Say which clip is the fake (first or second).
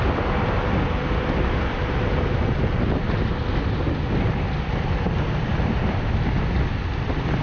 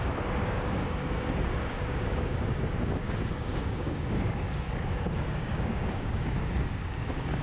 second